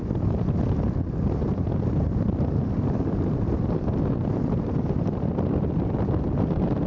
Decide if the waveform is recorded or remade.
remade